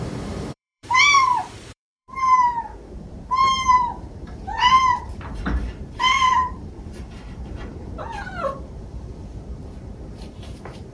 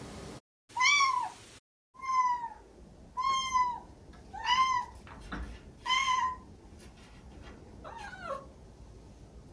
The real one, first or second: second